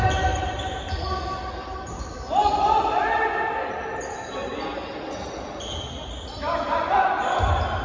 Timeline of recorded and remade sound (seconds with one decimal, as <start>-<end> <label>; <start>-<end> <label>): 0.0-7.8 recorded